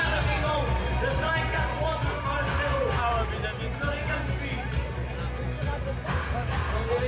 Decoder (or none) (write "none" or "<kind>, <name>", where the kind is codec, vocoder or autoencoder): none